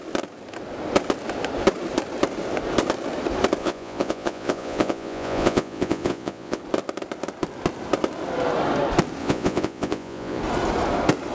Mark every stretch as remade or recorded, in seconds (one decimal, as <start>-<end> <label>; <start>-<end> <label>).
0.0-3.6 recorded; 3.6-6.6 remade; 6.6-9.2 recorded; 9.2-10.4 remade; 10.4-11.3 recorded

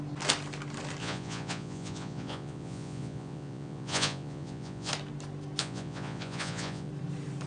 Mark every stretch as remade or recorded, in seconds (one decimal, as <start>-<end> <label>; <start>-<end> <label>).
0.0-1.0 recorded; 1.0-4.9 remade; 4.9-5.6 recorded; 5.6-6.9 remade; 6.9-7.5 recorded

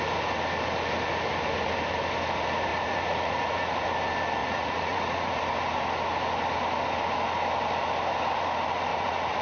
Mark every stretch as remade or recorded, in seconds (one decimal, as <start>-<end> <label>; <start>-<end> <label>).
0.0-2.7 recorded; 2.7-3.9 remade; 3.9-4.4 recorded; 4.4-5.4 remade; 5.4-8.9 recorded; 8.9-9.4 remade

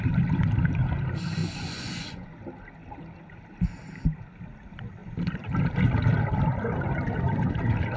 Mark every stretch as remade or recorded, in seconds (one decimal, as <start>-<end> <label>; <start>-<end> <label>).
0.0-1.4 recorded; 1.4-2.4 remade; 2.4-8.0 recorded

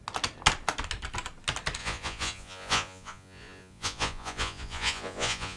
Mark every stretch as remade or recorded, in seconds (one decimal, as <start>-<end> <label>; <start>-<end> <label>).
0.0-1.8 recorded; 1.8-5.6 remade

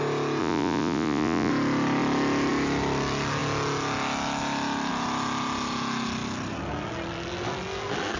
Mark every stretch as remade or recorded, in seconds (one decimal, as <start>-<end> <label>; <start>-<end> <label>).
0.0-0.4 recorded; 0.4-1.5 remade; 1.5-8.2 recorded

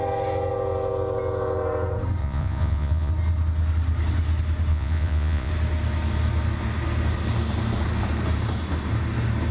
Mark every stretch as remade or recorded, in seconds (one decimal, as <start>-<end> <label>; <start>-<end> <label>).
0.0-2.2 recorded; 2.2-3.1 remade; 3.1-4.7 recorded; 4.7-5.5 remade; 5.5-9.5 recorded